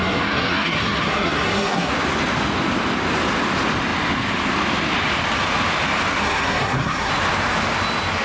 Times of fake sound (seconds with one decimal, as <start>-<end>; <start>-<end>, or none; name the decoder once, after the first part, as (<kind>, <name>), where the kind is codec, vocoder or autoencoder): 0.0-1.9 (codec, SNAC); 6.2-7.1